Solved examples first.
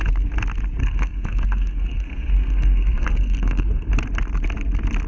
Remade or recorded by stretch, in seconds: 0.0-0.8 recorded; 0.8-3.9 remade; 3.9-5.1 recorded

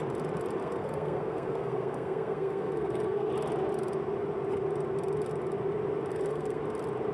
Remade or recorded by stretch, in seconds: 0.0-0.6 recorded; 0.6-3.3 remade; 3.3-6.1 recorded; 6.1-6.6 remade; 6.6-7.1 recorded

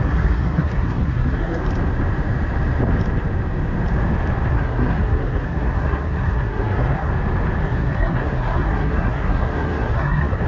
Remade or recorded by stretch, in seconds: 0.0-1.6 remade; 1.6-4.5 recorded; 4.5-7.1 remade; 7.1-7.6 recorded; 7.6-10.5 remade

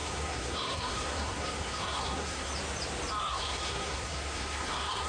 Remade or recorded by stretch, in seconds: 0.0-2.5 remade; 2.5-3.2 recorded; 3.2-5.1 remade

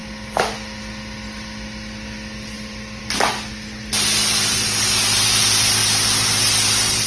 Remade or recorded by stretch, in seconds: 0.0-7.1 recorded

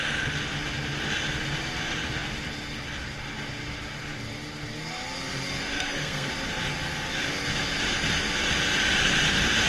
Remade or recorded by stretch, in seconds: 0.0-5.7 recorded; 5.7-6.3 remade; 6.3-9.7 recorded